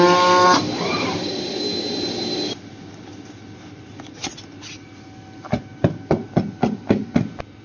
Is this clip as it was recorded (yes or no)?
yes